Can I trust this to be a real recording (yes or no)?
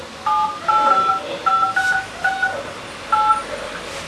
yes